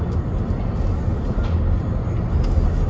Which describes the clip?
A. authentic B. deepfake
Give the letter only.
A